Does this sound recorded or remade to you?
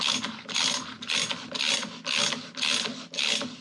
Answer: recorded